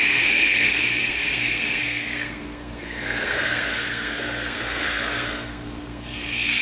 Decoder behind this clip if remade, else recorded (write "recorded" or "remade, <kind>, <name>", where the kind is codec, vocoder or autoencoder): remade, codec, SNAC